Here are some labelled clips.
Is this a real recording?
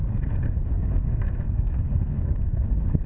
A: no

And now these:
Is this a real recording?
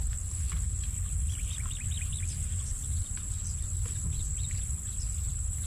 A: yes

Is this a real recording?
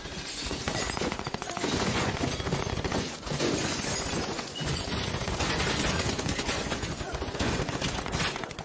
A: no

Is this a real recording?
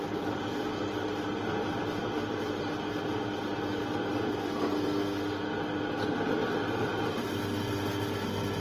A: yes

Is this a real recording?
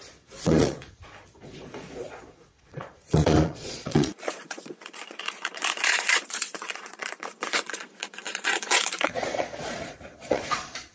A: no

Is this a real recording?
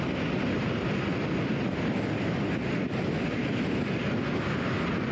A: yes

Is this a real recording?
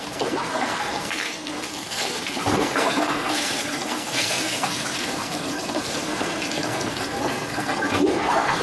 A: no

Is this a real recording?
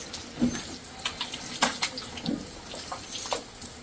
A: yes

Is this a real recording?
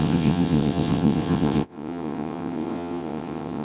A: no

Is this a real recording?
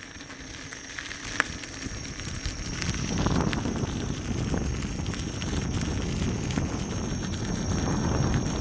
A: yes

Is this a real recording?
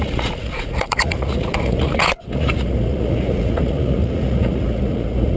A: no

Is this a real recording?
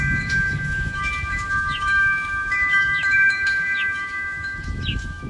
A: no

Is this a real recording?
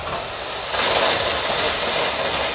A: yes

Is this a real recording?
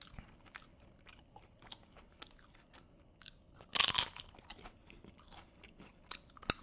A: yes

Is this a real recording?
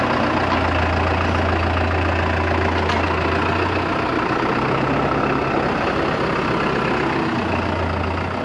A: yes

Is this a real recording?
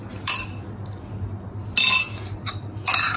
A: yes